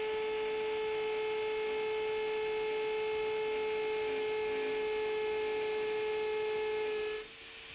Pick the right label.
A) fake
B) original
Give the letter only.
B